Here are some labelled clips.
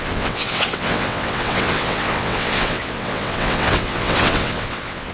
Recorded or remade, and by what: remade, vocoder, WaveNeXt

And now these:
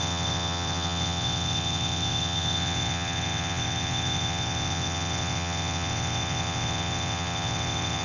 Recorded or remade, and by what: remade, vocoder, WaveNeXt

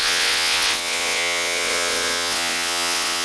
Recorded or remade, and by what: remade, vocoder, WaveNeXt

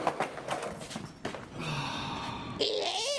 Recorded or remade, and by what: recorded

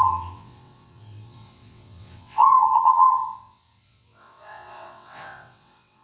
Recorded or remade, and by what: remade, vocoder, WaveNeXt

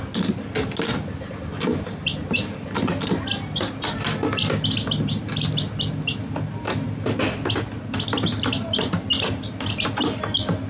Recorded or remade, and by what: recorded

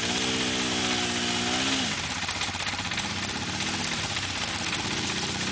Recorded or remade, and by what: recorded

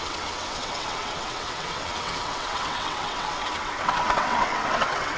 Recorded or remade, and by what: remade, vocoder, WaveNeXt